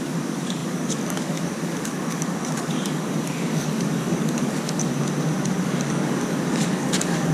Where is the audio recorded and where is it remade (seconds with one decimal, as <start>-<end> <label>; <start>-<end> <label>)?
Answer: 0.0-4.9 remade; 4.9-5.6 recorded; 5.6-7.3 remade